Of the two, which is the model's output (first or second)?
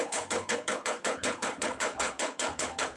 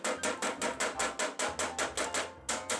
first